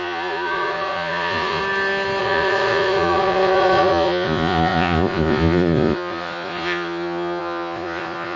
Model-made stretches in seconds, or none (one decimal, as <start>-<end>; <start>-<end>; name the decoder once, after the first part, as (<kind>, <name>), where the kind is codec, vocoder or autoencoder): 0.0-1.6 (vocoder, Vocos); 2.2-8.4